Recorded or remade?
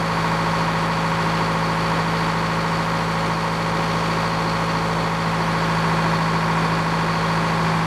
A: recorded